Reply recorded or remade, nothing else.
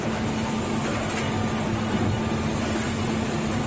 recorded